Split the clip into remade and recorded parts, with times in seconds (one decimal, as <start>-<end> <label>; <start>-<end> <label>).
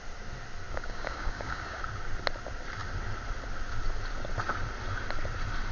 0.0-0.7 recorded; 0.7-1.8 remade; 1.8-5.7 recorded